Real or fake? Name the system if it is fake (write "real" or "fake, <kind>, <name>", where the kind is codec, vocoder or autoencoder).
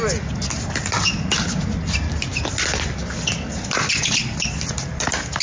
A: real